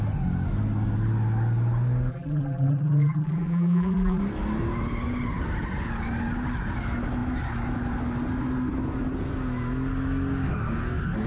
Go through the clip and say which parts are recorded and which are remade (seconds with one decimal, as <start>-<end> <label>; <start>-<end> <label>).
0.0-2.1 recorded; 2.1-4.2 remade; 4.2-11.3 recorded